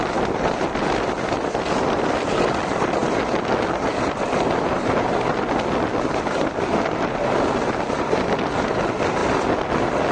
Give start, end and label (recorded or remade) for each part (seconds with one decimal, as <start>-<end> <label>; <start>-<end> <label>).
0.0-10.1 recorded